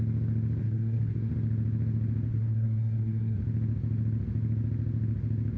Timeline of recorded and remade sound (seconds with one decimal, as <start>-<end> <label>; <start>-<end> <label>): 0.0-0.6 recorded; 0.6-1.3 remade; 1.3-2.3 recorded; 2.3-3.4 remade; 3.4-5.6 recorded